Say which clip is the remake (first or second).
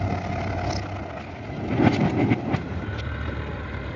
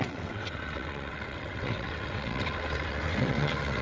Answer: second